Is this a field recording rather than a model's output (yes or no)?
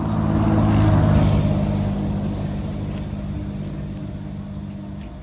yes